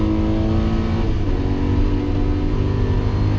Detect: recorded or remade recorded